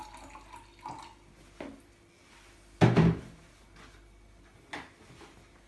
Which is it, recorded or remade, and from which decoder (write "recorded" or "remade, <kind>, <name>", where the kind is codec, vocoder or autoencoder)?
recorded